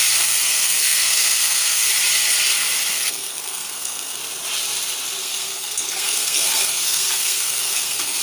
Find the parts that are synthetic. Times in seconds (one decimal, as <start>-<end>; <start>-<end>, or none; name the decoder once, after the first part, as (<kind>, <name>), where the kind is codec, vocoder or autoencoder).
0.4-1.9 (codec, SNAC); 2.9-4.2; 5.2-8.2